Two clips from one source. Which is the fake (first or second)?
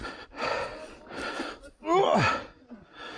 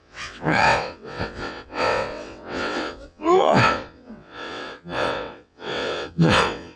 second